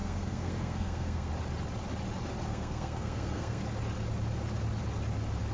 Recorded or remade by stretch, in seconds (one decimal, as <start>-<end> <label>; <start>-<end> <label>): 0.0-1.3 remade; 1.3-2.5 recorded; 2.5-3.6 remade; 3.6-5.5 recorded